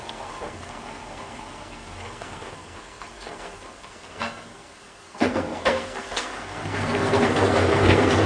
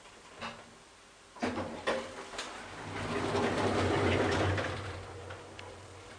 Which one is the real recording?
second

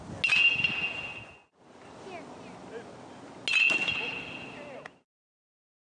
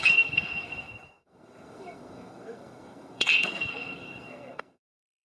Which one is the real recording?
first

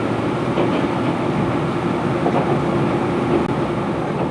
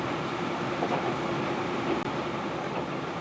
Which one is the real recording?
first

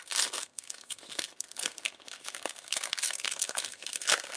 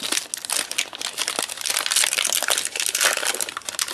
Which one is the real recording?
second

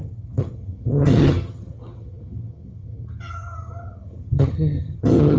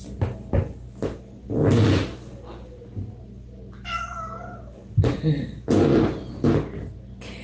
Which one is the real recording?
second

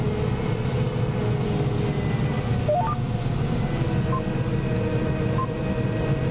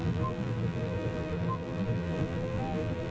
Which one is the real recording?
first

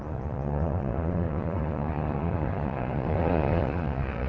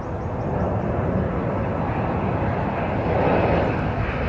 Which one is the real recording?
second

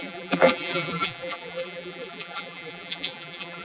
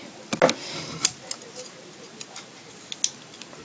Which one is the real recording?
second